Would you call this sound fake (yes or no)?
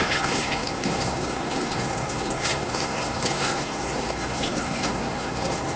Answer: yes